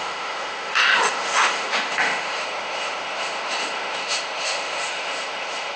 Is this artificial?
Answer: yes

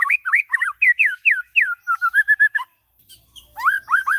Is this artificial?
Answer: yes